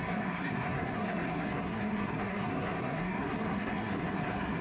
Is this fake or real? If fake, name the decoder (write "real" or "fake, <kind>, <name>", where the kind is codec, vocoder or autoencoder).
fake, codec, SNAC